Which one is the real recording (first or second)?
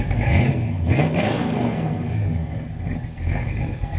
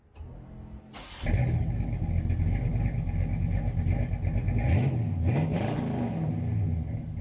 second